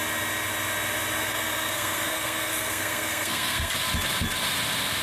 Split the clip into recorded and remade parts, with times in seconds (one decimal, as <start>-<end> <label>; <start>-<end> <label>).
0.0-1.2 recorded; 1.2-3.7 remade; 3.7-5.0 recorded